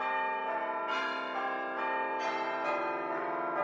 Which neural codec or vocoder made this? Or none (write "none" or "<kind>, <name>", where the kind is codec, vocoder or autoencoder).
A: vocoder, BigVGAN v2